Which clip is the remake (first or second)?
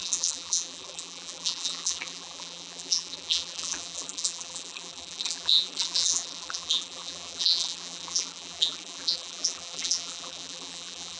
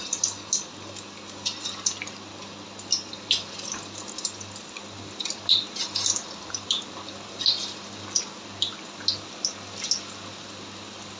first